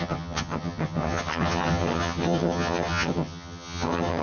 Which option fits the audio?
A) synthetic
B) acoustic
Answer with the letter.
A